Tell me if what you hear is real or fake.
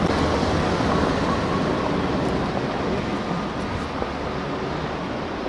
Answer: real